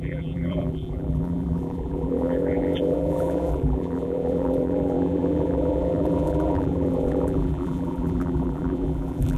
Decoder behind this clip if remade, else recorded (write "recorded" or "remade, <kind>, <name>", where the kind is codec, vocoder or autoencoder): remade, vocoder, BigVGAN v2